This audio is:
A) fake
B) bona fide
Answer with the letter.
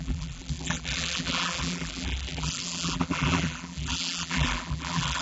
A